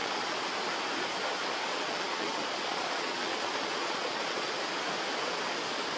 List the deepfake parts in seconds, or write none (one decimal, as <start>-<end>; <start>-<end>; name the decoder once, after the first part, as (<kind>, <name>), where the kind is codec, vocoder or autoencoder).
0.0-0.5 (vocoder, Vocos); 1.7-4.5